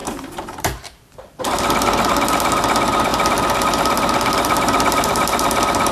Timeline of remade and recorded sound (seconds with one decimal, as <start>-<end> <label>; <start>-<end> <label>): 0.0-1.4 remade; 1.4-3.1 recorded; 3.1-5.9 remade